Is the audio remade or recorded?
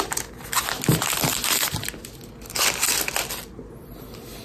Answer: recorded